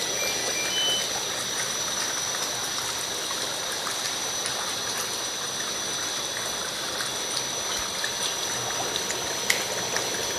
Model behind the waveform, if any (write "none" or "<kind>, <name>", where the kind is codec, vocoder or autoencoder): none